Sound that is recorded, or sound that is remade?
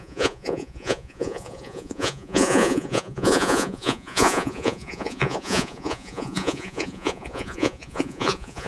remade